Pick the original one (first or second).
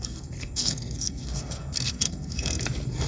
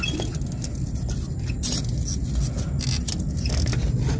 second